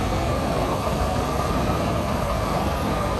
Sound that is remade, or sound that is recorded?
remade